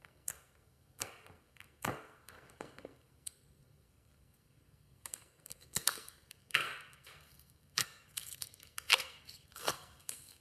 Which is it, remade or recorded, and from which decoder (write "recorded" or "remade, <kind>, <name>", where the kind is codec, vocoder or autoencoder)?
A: remade, codec, SNAC